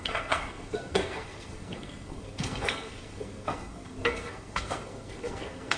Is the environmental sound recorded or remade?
remade